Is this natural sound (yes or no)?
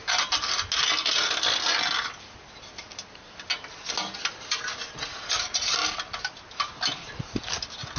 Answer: yes